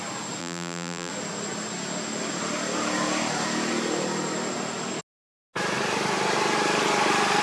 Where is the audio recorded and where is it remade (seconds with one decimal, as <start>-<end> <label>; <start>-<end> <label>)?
0.0-0.4 recorded; 0.4-1.1 remade; 1.1-7.4 recorded